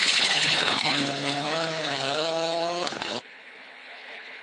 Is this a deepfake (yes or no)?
yes